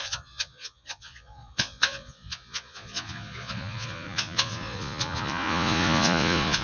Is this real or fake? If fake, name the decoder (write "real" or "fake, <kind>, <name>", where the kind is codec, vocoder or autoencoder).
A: fake, vocoder, Vocos